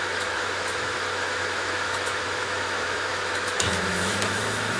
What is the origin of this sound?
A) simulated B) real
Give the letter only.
A